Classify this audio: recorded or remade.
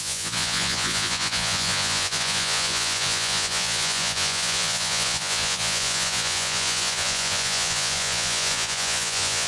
remade